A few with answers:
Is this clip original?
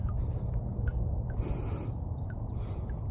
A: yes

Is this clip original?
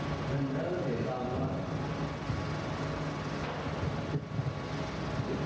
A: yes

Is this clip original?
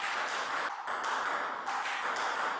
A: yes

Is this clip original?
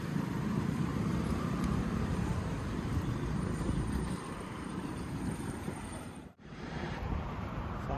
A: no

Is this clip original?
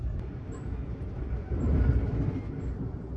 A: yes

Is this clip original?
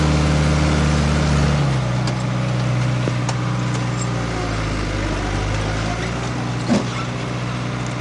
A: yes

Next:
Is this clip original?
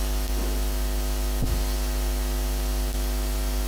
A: yes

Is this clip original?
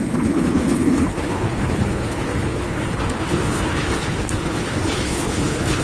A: no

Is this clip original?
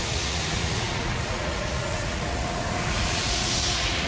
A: no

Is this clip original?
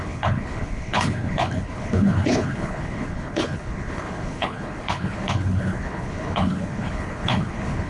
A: no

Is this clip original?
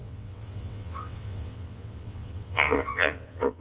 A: no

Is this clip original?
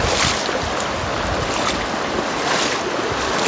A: yes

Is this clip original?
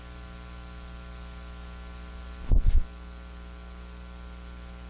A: yes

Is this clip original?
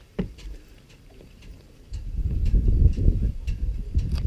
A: no